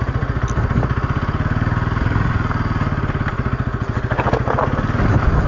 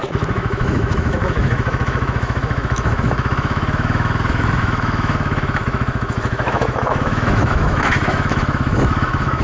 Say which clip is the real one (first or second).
first